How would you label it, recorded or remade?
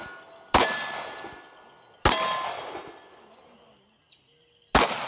recorded